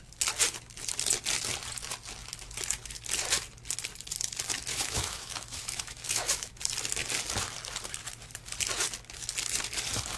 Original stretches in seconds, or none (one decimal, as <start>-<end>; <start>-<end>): 0.0-4.7; 6.6-10.2